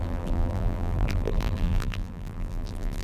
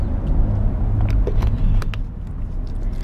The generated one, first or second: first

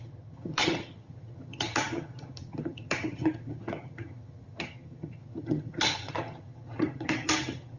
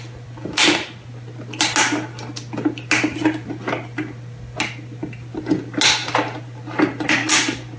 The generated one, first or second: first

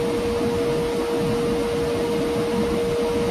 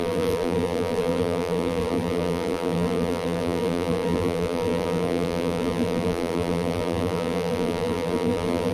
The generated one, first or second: second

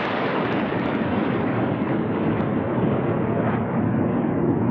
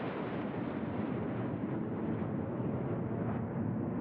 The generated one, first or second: first